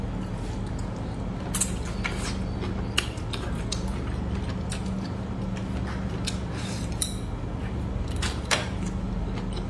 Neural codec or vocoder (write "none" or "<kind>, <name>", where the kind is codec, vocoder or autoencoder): none